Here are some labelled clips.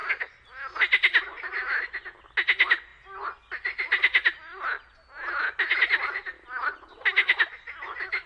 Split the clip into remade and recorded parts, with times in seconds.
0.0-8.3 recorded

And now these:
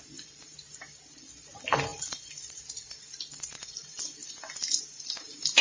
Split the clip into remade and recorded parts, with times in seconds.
0.0-5.6 recorded

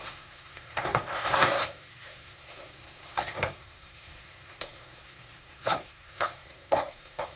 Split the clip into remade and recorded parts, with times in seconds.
0.0-7.4 remade

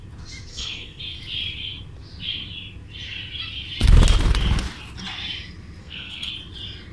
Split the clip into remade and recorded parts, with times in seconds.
0.0-0.5 recorded; 0.5-1.0 remade; 1.0-5.8 recorded; 5.8-6.3 remade; 6.3-6.9 recorded

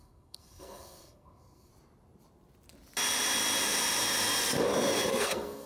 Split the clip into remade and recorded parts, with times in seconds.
0.0-1.7 remade; 1.7-5.1 recorded; 5.1-5.7 remade

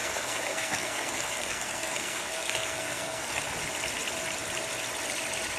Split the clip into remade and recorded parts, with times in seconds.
0.0-3.4 remade; 3.4-5.6 recorded

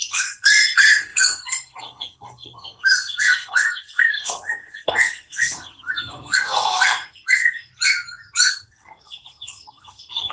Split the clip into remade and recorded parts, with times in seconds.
0.0-7.7 remade; 7.7-8.5 recorded; 8.5-10.3 remade

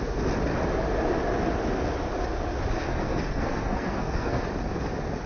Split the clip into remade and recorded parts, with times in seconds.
0.0-2.9 recorded; 2.9-4.4 remade; 4.4-5.3 recorded